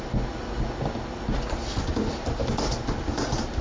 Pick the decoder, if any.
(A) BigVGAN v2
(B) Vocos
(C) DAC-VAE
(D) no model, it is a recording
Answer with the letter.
D